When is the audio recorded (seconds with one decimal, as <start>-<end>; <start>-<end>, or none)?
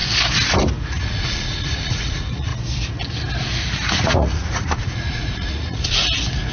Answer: 0.0-0.9; 2.5-3.9; 6.0-6.5